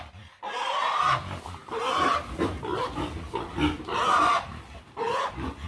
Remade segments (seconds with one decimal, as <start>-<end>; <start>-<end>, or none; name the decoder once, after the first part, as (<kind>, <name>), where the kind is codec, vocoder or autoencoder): none